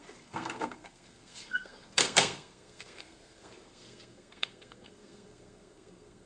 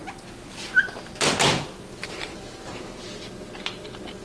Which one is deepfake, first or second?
first